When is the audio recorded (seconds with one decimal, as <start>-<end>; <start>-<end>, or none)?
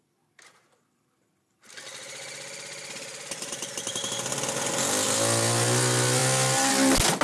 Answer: 0.0-7.2